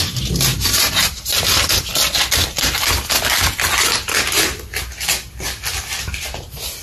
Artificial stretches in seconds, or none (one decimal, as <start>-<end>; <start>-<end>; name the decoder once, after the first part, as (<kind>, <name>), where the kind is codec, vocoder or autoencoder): 0.5-1.2 (vocoder, BigVGAN v2); 6.1-6.8